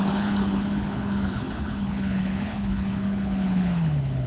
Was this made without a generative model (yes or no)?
no